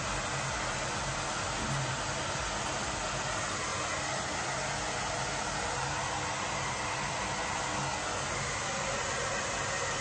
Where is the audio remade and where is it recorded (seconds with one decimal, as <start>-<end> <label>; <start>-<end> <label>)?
0.0-10.0 recorded